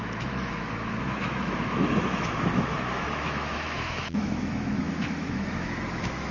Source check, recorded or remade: remade